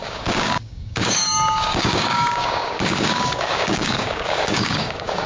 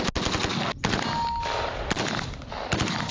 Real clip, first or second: second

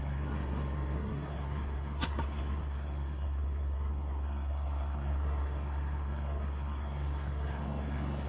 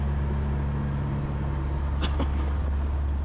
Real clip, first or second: second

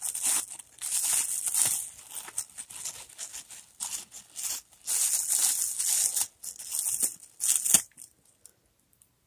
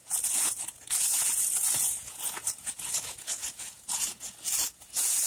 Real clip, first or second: first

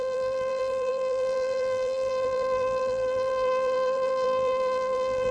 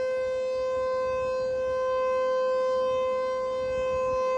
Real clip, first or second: second